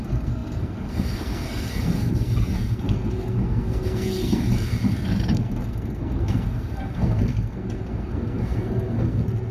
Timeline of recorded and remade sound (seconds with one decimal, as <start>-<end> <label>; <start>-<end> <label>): 0.0-9.5 remade